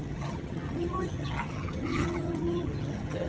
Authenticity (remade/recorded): remade